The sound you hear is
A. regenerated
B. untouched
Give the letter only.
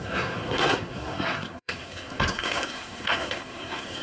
A